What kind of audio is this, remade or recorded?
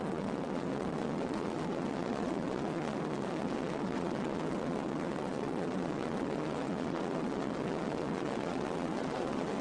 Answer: remade